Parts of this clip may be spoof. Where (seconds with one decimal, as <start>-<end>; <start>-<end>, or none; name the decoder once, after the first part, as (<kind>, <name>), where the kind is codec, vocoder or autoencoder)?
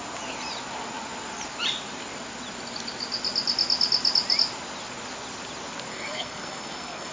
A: 5.9-7.1 (codec, SNAC)